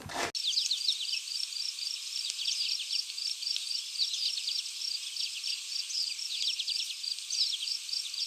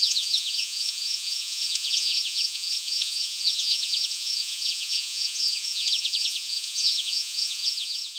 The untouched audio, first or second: first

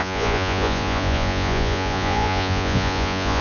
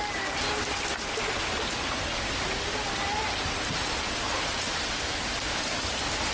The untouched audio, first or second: second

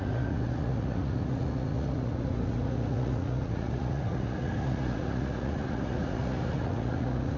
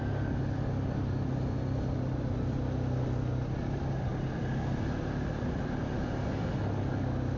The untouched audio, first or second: second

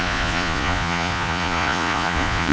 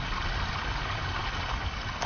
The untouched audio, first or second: second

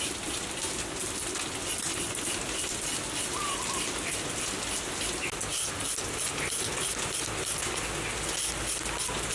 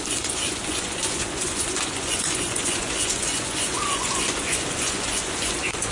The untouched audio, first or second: first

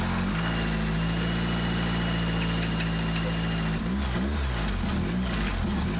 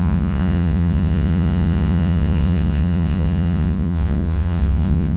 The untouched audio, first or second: first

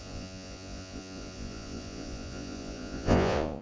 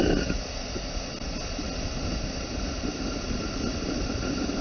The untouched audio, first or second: second